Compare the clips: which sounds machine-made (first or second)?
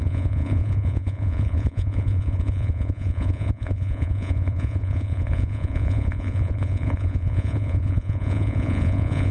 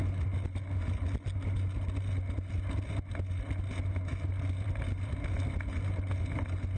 first